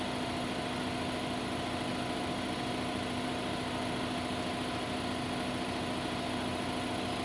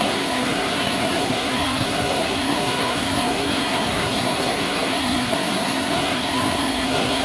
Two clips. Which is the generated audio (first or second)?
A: second